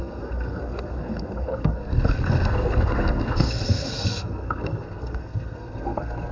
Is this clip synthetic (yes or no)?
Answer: yes